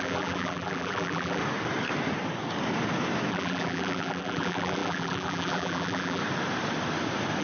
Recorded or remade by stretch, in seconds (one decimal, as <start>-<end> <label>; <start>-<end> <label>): 0.0-1.4 remade; 1.4-3.3 recorded; 3.3-6.2 remade; 6.2-7.4 recorded